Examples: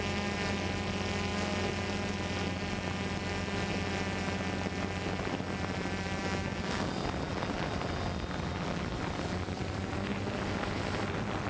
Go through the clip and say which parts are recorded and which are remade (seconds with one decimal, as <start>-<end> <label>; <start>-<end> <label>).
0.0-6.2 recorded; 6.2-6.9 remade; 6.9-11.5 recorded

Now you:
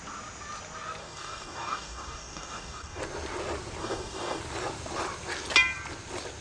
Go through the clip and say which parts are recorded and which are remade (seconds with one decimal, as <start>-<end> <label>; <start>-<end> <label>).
0.0-1.0 recorded; 1.0-3.0 remade; 3.0-3.8 recorded; 3.8-4.4 remade; 4.4-6.4 recorded

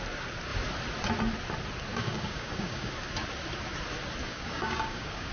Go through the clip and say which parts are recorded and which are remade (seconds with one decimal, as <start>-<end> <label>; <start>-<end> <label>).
0.0-1.9 recorded; 1.9-2.9 remade; 2.9-4.2 recorded; 4.2-5.3 remade

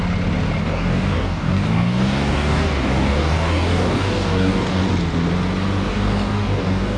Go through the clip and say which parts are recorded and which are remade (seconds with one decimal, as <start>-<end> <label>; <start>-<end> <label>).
0.0-0.6 recorded; 0.6-4.8 remade; 4.8-5.9 recorded; 5.9-7.0 remade

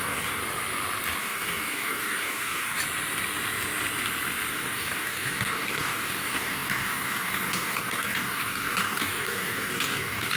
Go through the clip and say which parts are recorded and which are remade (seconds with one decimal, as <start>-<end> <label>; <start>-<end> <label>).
0.0-0.4 remade; 0.4-1.2 recorded; 1.2-2.8 remade; 2.8-4.5 recorded; 4.5-10.4 remade

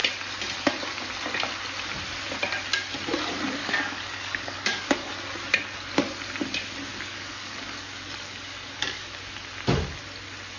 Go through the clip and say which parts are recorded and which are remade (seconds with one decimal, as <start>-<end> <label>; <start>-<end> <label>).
0.0-3.6 recorded; 3.6-5.1 remade; 5.1-6.9 recorded; 6.9-9.2 remade; 9.2-10.6 recorded

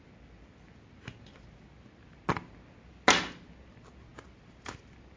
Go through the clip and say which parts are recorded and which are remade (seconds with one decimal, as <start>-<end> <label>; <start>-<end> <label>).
0.0-5.2 recorded

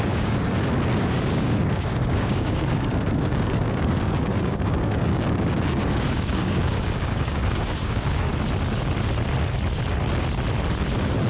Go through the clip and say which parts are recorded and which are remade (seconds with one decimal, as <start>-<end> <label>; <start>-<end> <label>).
0.0-0.5 remade; 0.5-1.0 recorded; 1.0-8.3 remade; 8.3-11.3 recorded